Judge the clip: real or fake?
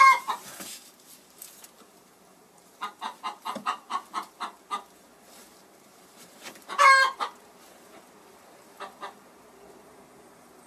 fake